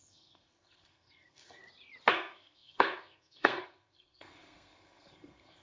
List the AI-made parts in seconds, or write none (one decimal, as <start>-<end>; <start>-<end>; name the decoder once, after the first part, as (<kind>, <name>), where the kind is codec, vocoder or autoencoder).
0.0-1.6 (codec, SNAC); 2.1-5.6